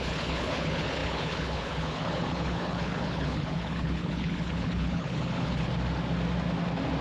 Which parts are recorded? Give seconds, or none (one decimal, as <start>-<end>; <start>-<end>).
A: 5.7-7.0